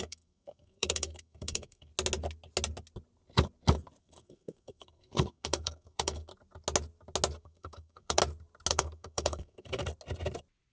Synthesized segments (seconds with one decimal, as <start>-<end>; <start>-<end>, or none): 0.0-1.9; 4.0-6.3; 7.4-8.2; 8.7-9.8